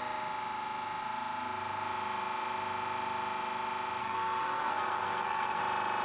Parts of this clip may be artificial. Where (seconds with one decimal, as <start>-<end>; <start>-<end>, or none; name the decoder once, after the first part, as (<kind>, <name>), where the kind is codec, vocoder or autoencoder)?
4.0-5.6 (codec, SNAC)